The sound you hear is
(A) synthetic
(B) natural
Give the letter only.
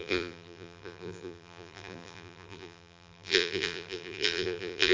A